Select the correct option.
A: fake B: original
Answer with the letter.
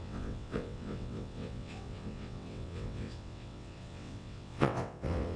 A